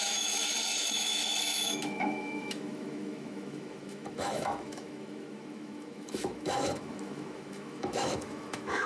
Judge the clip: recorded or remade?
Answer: remade